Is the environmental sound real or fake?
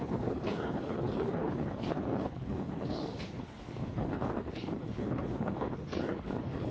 fake